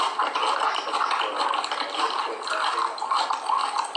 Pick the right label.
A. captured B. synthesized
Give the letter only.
A